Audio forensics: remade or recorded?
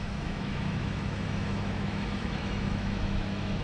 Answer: remade